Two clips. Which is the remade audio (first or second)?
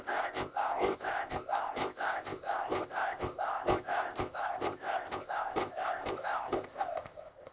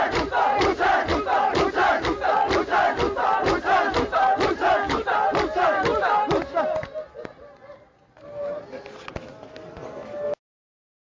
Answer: first